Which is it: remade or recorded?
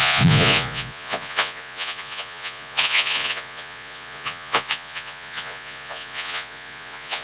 remade